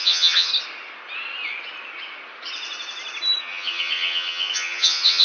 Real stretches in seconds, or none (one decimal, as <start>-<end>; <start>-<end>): 0.5-3.4